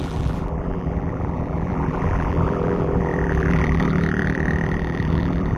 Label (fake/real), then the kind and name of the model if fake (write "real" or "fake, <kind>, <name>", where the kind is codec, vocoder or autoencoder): fake, vocoder, BigVGAN v2